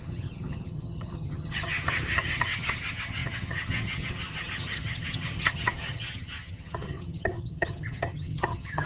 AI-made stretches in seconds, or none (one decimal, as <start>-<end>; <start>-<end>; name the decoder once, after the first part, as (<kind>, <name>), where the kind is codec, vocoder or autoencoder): 0.0-8.8 (vocoder, HiFi-GAN)